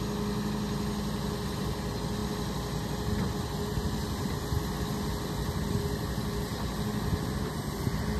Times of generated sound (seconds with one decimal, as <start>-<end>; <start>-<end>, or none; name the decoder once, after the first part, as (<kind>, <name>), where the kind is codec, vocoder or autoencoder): none